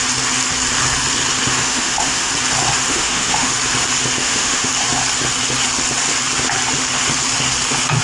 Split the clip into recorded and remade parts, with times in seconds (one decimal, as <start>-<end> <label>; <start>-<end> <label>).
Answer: 0.0-1.6 recorded; 1.6-2.3 remade; 2.3-2.9 recorded; 2.9-3.5 remade; 3.5-4.2 recorded; 4.2-4.7 remade; 4.7-8.0 recorded